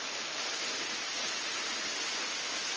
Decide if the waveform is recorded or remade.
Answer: recorded